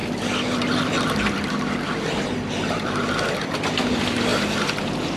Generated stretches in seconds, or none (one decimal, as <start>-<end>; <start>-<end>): 0.0-5.2